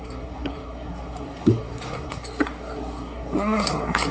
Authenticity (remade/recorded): remade